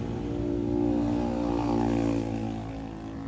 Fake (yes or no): no